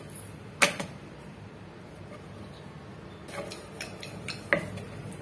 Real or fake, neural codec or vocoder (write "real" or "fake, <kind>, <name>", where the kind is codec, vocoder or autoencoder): real